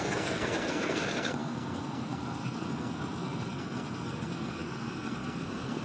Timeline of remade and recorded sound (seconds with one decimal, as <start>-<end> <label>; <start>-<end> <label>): 0.0-5.8 remade